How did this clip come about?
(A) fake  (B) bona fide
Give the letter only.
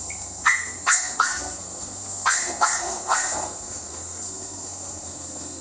A